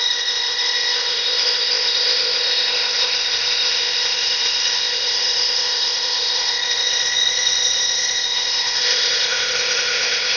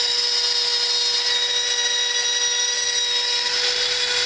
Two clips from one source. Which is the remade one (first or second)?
first